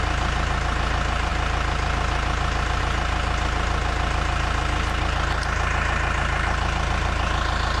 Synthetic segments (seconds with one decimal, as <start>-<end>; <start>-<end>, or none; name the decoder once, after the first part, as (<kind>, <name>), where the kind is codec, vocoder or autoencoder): none